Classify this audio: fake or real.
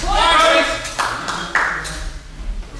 real